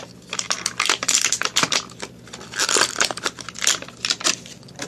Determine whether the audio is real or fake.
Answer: real